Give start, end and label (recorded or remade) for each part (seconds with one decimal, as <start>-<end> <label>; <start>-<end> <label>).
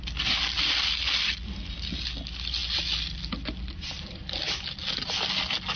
0.0-5.8 recorded